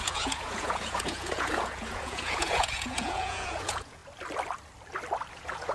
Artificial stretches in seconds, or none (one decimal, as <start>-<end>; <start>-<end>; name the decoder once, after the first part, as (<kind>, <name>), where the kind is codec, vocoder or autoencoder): 0.0-4.0 (vocoder, Vocos); 5.3-5.7